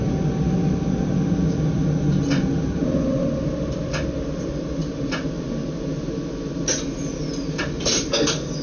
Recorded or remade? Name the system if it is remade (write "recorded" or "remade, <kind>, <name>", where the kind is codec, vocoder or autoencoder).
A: recorded